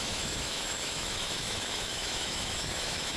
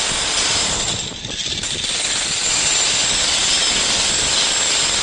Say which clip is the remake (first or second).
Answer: first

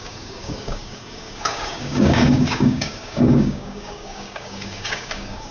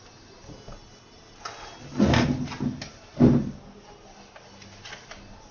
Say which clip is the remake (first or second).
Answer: first